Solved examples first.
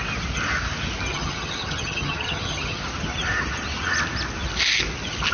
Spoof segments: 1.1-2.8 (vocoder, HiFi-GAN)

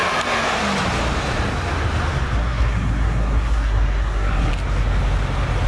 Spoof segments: 2.4-4.5 (codec, SNAC)

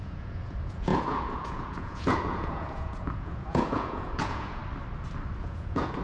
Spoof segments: 0.0-4.6 (vocoder, Vocos); 5.4-6.0

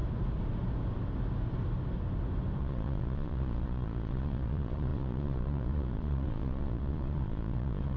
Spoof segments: 2.6-8.0 (vocoder, Vocos)

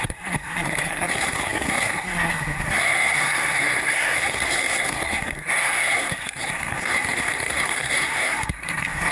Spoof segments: 0.0-9.1 (codec, SNAC)

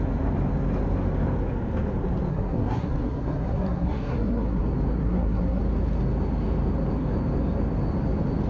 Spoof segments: 2.3-4.6 (codec, SNAC); 5.0-5.6

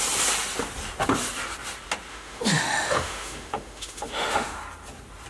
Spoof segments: 2.1-4.6 (autoencoder, DAC-VAE)

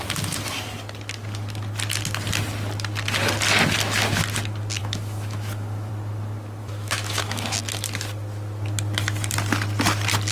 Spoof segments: 4.8-5.9 (autoencoder, DAC-VAE); 6.6-7.6